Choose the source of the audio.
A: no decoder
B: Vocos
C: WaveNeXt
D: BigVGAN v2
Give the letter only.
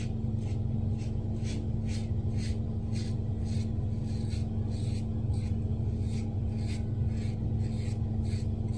A